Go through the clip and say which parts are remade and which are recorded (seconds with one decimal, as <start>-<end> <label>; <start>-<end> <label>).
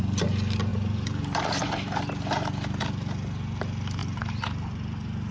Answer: 0.0-0.7 recorded; 0.7-2.8 remade; 2.8-4.0 recorded; 4.0-5.3 remade